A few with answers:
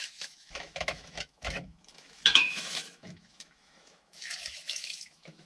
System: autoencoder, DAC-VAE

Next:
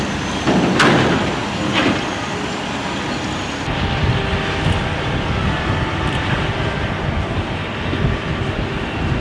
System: none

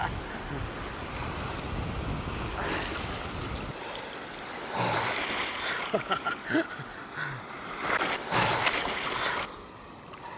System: none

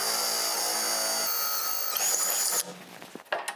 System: none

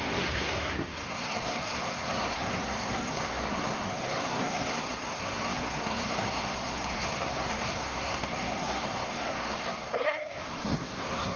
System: codec, SNAC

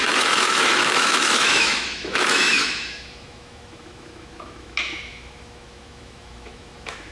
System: autoencoder, DAC-VAE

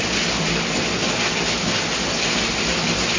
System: none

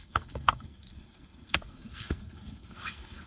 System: codec, SNAC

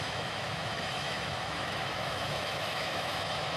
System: autoencoder, DAC-VAE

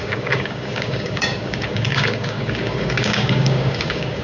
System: codec, DAC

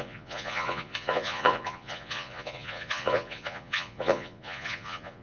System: vocoder, Vocos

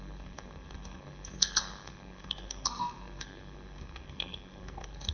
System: codec, SNAC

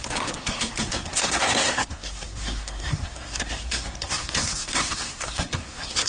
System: codec, SNAC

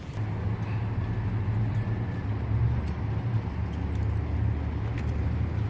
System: none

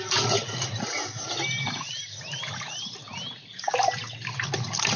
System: none